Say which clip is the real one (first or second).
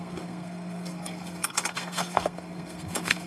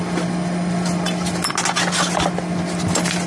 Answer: second